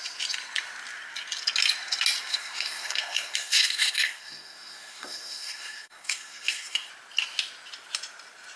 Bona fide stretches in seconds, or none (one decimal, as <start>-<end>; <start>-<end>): 0.0-2.3; 6.9-8.6